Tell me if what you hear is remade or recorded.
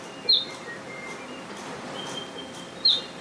recorded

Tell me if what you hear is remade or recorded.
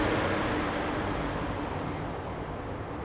recorded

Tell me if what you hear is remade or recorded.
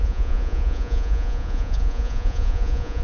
remade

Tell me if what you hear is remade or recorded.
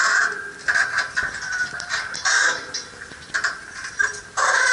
recorded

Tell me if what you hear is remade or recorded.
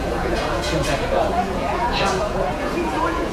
remade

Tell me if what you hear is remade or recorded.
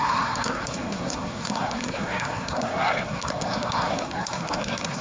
remade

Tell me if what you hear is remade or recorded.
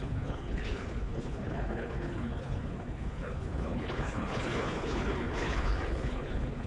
remade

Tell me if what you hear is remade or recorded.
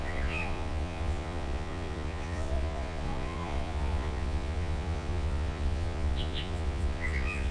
remade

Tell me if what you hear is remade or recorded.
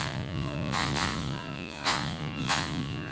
remade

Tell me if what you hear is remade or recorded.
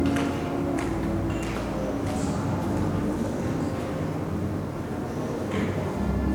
recorded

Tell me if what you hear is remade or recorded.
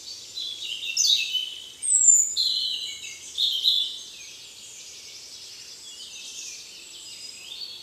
recorded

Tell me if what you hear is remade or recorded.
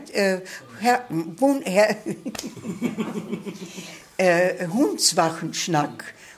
recorded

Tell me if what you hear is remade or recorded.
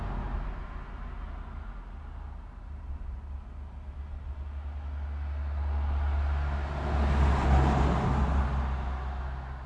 recorded